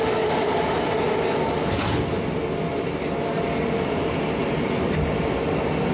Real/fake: real